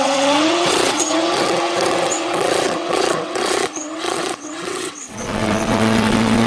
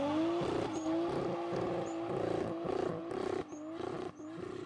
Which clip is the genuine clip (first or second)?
second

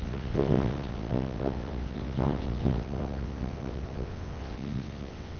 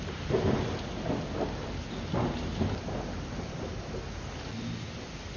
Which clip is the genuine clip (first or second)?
second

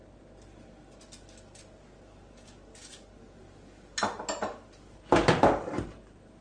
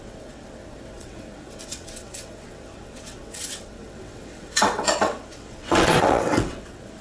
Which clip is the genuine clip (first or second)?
first